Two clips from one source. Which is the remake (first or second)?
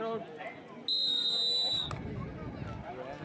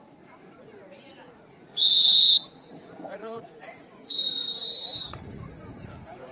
second